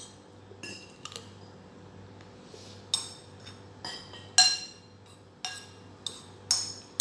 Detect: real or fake real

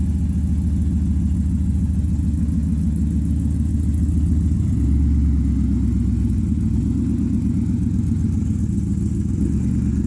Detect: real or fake real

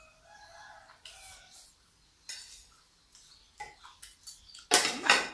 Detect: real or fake real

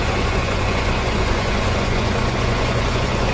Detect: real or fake fake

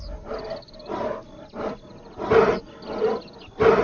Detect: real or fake real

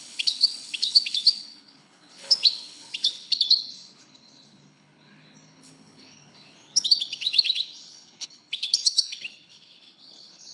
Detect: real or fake fake